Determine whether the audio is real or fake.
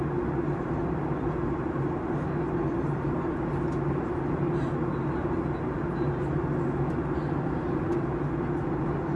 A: real